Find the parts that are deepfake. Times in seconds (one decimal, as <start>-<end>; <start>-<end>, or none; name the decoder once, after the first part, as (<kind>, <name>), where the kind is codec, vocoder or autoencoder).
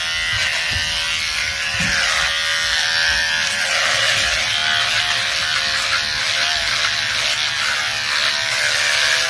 none